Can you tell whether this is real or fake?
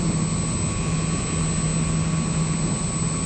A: real